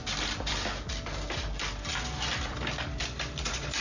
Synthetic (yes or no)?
yes